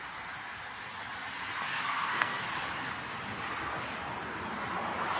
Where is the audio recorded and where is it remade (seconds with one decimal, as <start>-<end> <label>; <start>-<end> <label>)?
0.0-1.7 recorded; 1.7-2.4 remade; 2.4-5.2 recorded

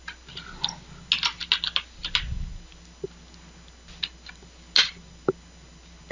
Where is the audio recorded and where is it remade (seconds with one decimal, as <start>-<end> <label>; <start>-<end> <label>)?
0.0-6.1 recorded